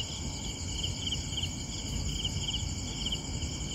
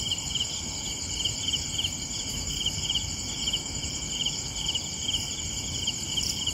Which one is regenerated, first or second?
second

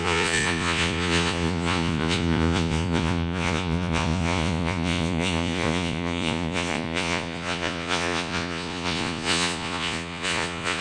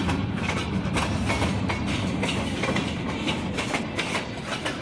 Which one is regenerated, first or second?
first